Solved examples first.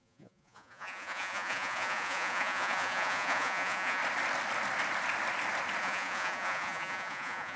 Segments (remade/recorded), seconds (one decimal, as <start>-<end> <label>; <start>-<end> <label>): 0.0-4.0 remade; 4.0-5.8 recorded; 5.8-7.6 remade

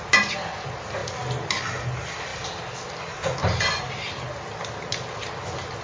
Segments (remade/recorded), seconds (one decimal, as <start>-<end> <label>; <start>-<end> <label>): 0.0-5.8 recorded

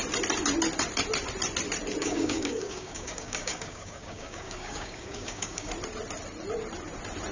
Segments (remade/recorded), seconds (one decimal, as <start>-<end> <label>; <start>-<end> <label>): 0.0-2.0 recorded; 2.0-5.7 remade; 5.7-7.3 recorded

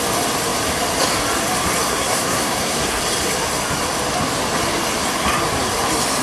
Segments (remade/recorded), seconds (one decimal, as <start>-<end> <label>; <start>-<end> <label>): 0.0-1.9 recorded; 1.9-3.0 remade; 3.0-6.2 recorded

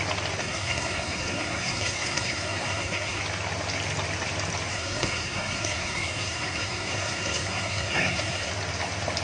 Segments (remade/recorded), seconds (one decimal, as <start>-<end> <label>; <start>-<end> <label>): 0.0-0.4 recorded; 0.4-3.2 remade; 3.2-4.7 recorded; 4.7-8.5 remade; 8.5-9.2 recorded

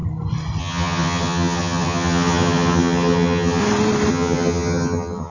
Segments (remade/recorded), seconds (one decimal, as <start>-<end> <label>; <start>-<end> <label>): 0.0-0.6 recorded; 0.6-3.6 remade; 3.6-4.1 recorded; 4.1-5.3 remade

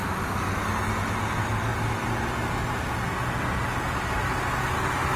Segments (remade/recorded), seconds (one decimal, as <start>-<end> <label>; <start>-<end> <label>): 0.0-5.2 recorded

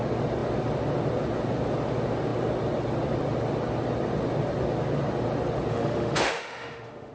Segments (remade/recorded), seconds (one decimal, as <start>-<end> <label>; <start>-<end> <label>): 0.0-5.7 recorded; 5.7-7.1 remade